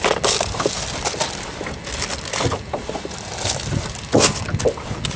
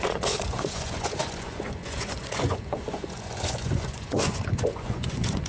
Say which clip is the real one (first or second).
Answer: first